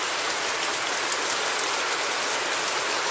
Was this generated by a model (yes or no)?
no